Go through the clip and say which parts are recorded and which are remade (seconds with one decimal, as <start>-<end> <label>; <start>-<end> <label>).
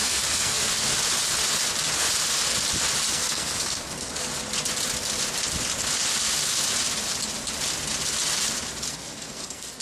0.0-0.7 remade; 0.7-3.1 recorded; 3.1-4.3 remade; 4.3-8.9 recorded; 8.9-9.8 remade